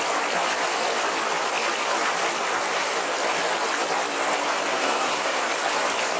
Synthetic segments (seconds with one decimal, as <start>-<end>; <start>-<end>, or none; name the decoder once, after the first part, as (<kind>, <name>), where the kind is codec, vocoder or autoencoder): 4.7-5.4 (codec, SNAC)